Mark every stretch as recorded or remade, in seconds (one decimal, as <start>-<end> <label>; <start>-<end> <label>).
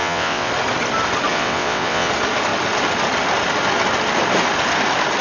0.0-0.5 remade; 0.5-1.3 recorded; 1.3-2.1 remade; 2.1-5.2 recorded